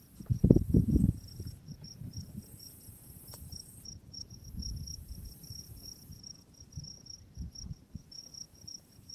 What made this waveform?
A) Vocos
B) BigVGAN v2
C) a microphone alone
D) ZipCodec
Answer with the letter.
A